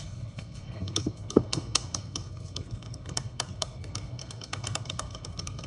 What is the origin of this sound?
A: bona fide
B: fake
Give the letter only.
B